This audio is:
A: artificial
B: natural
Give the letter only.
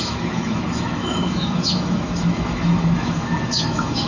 A